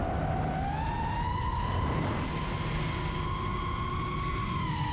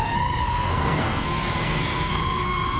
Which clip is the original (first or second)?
first